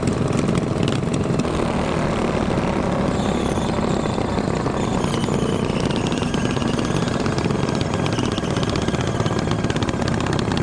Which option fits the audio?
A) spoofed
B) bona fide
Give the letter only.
B